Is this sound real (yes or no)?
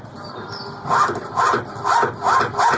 yes